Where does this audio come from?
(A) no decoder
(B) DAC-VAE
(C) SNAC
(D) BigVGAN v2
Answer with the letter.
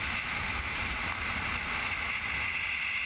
A